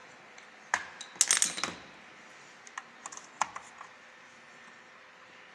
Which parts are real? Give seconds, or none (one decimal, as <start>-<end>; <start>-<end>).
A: 0.0-5.5